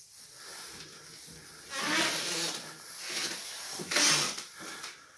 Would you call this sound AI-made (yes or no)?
no